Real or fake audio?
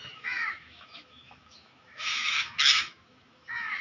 fake